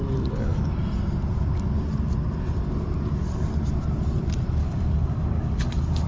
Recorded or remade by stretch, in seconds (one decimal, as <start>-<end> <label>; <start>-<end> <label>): 0.0-4.6 recorded; 4.6-6.1 remade